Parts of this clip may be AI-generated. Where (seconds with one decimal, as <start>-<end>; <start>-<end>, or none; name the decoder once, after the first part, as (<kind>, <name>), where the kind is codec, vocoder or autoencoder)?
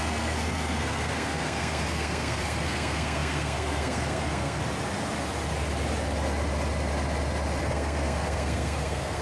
0.0-4.6 (codec, SNAC); 7.6-9.2